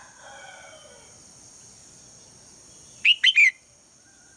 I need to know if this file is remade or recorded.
recorded